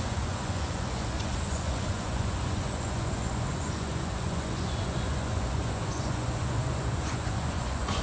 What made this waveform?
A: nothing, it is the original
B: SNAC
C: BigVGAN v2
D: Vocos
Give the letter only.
D